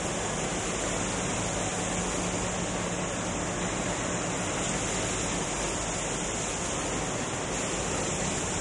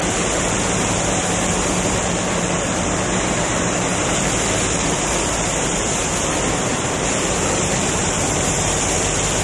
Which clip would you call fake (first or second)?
second